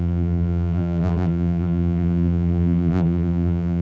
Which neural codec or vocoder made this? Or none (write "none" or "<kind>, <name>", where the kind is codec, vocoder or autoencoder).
vocoder, BigVGAN v2